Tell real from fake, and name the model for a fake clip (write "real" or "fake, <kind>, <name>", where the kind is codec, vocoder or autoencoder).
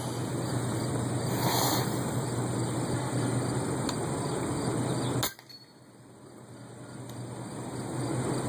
real